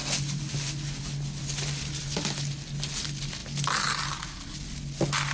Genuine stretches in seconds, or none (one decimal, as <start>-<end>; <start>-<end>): 0.0-5.3